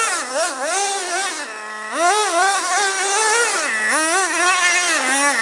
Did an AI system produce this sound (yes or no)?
no